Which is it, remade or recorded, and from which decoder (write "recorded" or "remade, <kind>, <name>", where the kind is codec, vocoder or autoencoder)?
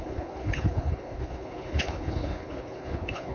remade, codec, HILCodec